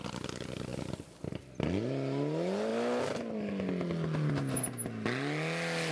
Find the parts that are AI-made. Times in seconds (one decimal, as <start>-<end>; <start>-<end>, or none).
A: none